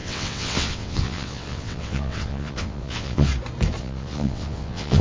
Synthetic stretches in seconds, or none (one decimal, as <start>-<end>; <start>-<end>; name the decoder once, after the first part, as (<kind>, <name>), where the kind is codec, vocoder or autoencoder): 0.0-3.3 (vocoder, WaveNeXt); 3.8-5.0